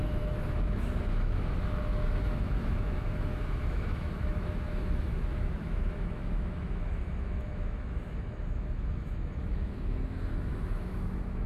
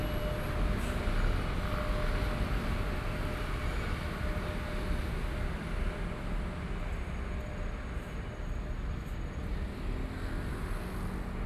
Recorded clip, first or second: second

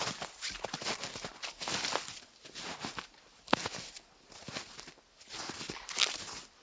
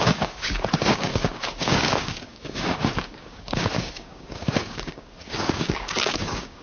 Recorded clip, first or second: first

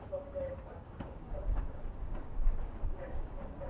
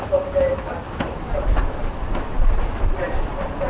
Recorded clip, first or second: second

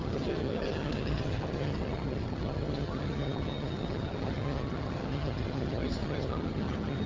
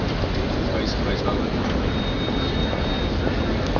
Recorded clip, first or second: second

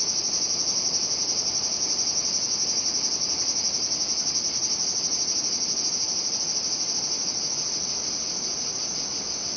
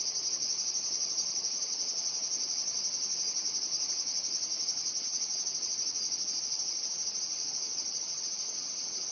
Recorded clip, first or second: first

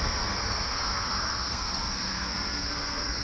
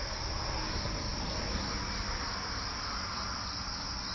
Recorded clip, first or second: second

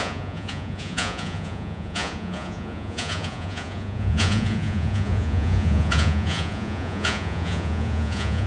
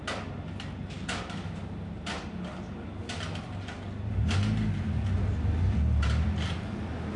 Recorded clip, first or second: second